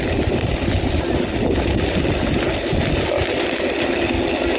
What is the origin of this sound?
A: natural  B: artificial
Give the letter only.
A